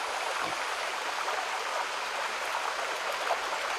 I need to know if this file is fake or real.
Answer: real